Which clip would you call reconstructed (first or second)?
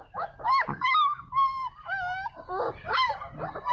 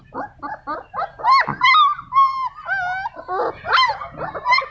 first